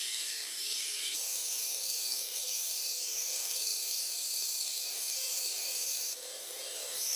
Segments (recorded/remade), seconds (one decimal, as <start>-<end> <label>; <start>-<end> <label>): 0.0-7.2 remade